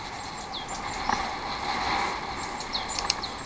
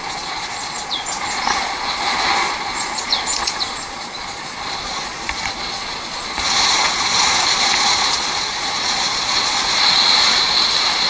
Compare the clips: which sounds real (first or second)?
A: first